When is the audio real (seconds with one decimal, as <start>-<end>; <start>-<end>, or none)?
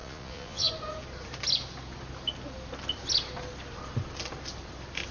0.7-5.1